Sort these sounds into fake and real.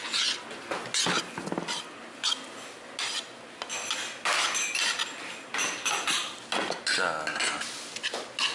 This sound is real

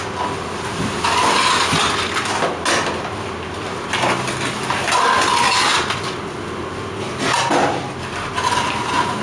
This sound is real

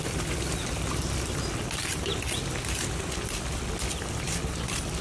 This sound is real